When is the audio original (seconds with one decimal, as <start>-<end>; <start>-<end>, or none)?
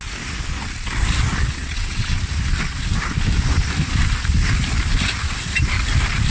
0.0-1.6; 2.2-6.3